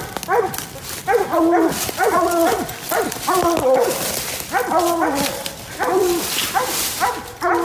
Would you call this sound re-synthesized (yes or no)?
no